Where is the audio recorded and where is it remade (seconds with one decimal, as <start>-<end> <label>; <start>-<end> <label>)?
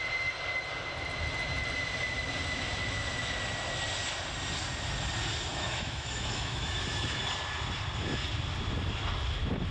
0.0-5.5 recorded; 5.5-7.2 remade; 7.2-9.7 recorded